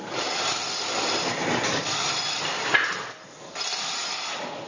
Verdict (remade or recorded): recorded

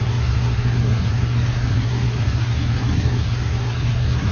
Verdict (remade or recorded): remade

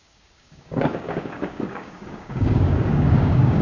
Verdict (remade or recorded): remade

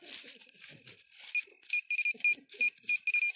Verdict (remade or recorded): recorded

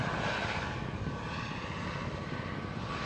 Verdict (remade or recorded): recorded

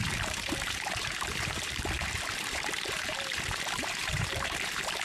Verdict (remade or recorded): remade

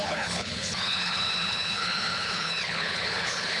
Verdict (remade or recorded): remade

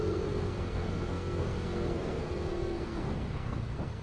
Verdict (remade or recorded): remade